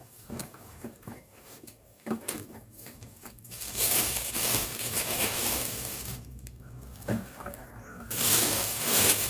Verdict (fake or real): fake